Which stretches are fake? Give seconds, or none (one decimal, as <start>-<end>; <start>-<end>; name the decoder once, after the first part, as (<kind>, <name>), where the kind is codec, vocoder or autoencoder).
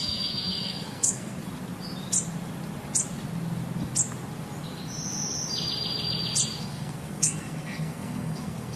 0.0-1.4 (codec, SNAC); 6.6-8.8